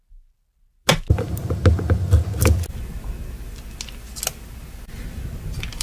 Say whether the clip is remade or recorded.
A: recorded